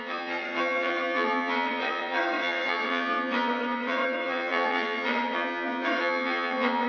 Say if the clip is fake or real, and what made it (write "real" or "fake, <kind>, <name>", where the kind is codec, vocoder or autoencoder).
fake, vocoder, WaveNeXt